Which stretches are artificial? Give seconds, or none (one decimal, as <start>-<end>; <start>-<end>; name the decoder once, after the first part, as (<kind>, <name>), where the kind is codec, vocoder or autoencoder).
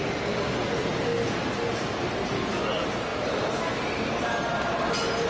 none